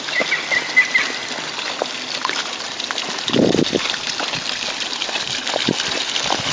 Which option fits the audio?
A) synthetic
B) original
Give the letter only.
B